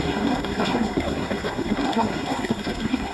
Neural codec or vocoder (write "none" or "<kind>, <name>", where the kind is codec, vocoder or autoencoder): codec, SNAC